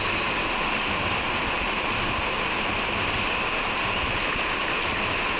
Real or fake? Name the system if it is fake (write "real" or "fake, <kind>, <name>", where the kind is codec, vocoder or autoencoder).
real